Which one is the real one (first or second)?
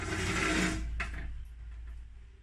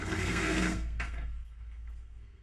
first